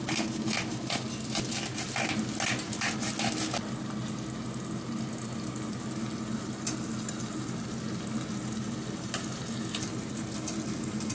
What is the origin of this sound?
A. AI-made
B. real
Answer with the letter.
B